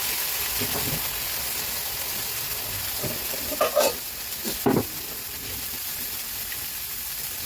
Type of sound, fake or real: real